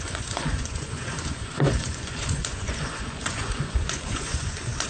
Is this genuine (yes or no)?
no